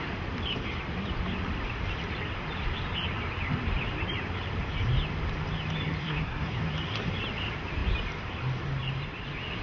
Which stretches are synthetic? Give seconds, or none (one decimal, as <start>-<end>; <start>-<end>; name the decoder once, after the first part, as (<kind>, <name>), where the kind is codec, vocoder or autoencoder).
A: 6.0-6.6 (codec, SNAC)